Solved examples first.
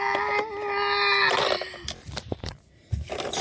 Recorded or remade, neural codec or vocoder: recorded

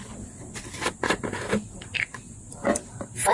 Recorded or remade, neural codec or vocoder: remade, vocoder, BigVGAN v2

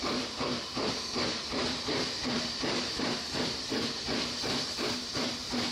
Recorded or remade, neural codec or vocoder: remade, vocoder, BigVGAN v2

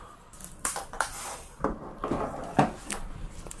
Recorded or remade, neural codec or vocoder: remade, vocoder, BigVGAN v2